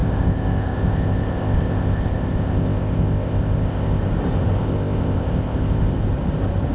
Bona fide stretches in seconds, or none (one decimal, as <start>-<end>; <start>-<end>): 4.0-4.6; 5.9-6.7